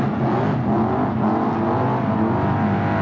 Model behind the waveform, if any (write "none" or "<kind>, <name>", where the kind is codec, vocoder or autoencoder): none